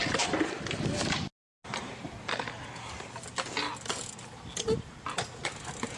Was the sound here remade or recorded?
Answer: recorded